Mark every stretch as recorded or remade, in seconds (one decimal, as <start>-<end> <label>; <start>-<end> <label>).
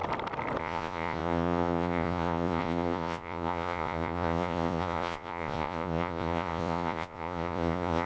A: 0.0-0.6 recorded; 0.6-8.1 remade